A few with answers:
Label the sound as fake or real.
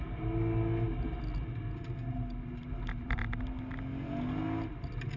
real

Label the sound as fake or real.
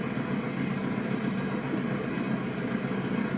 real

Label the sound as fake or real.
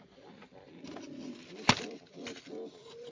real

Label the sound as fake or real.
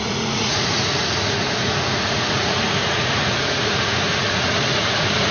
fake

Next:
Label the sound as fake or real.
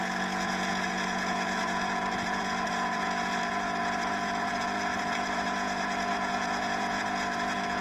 fake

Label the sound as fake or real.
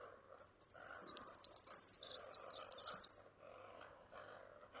real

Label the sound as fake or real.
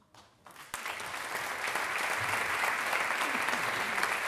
real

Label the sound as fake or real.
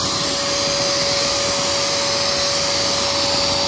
real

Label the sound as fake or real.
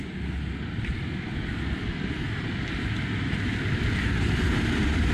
real